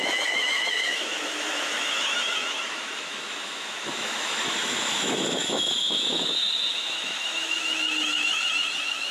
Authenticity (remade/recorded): remade